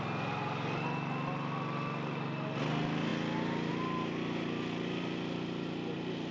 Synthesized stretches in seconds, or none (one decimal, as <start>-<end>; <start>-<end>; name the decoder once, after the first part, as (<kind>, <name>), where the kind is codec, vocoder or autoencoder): none